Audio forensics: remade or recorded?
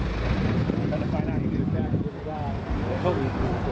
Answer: recorded